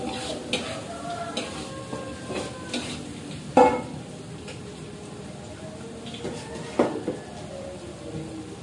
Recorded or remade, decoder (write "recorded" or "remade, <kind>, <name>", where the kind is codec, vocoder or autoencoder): recorded